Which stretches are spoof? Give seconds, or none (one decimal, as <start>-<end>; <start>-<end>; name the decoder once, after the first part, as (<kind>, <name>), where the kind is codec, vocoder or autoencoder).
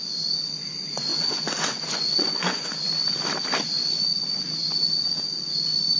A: 1.1-2.8 (vocoder, Vocos)